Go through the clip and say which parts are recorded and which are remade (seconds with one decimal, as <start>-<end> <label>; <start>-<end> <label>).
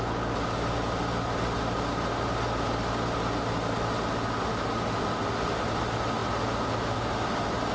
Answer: 0.0-7.7 recorded